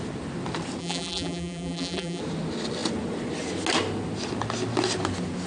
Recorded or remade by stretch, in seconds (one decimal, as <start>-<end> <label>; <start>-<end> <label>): 0.0-0.8 recorded; 0.8-2.2 remade; 2.2-5.5 recorded